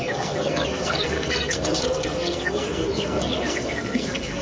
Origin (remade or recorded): remade